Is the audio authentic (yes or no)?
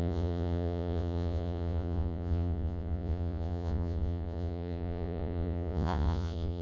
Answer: no